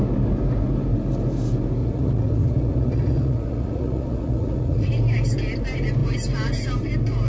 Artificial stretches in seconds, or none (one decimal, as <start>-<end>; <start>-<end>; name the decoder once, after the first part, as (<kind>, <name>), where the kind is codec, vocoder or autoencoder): 1.8-4.9 (vocoder, Vocos)

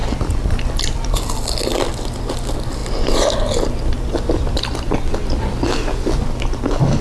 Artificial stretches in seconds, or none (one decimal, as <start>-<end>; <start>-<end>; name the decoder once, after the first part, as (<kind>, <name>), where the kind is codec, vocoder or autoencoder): none

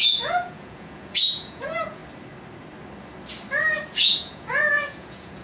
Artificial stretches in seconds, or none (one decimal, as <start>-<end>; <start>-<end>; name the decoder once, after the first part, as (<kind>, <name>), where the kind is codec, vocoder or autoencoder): 0.0-2.0 (vocoder, Vocos); 3.9-5.4